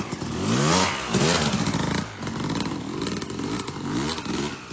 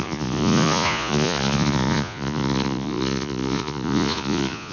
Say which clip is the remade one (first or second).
second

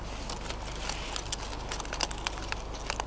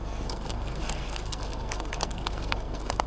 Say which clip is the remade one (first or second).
second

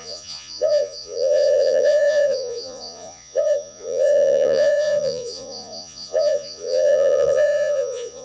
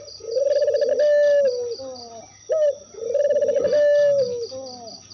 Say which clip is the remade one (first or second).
first